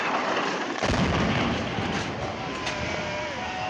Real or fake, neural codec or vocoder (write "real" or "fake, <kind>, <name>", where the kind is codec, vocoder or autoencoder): real